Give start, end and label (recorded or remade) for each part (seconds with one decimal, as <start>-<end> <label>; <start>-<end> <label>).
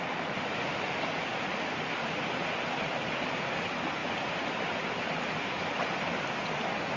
0.0-7.0 recorded